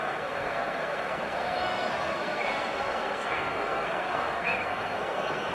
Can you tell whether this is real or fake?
fake